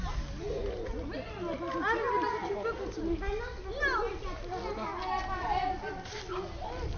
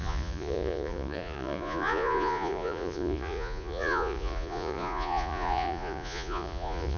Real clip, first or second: first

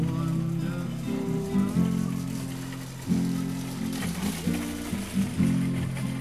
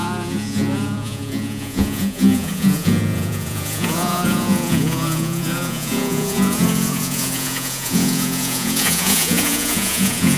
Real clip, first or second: first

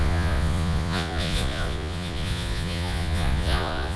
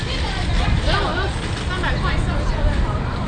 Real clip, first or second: second